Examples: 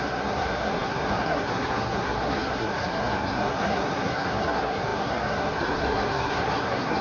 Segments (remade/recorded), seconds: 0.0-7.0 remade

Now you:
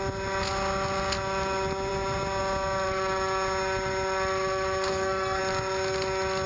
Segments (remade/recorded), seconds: 0.0-4.9 recorded; 4.9-5.4 remade; 5.4-6.5 recorded

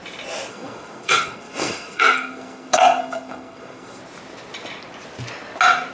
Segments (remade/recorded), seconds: 0.0-0.5 recorded; 0.5-4.0 remade; 4.0-5.9 recorded

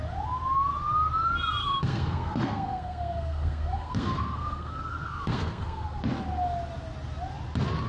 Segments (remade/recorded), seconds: 0.0-1.6 recorded; 1.6-6.0 remade; 6.0-7.9 recorded

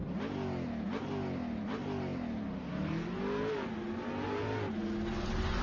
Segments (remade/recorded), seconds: 0.0-5.6 recorded

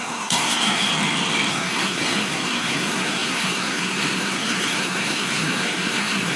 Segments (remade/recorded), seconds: 0.0-0.9 remade; 0.9-1.5 recorded; 1.5-6.4 remade